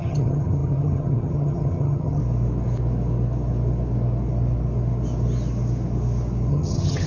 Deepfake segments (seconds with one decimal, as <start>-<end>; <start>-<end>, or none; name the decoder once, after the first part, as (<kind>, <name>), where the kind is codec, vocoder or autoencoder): 0.0-2.2 (vocoder, HiFi-GAN); 6.5-7.1

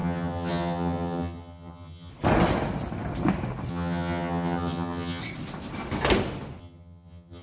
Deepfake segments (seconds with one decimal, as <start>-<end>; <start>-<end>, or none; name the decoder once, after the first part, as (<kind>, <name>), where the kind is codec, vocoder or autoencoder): 0.0-2.1 (vocoder, HiFi-GAN); 3.7-5.2; 6.6-7.4

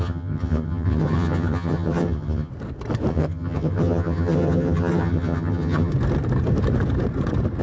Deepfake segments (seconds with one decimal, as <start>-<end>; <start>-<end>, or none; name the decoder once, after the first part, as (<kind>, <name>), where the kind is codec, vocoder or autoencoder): 0.0-2.5 (vocoder, HiFi-GAN); 3.1-5.9